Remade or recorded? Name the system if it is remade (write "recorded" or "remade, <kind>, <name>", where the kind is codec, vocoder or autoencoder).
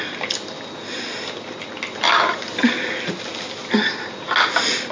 recorded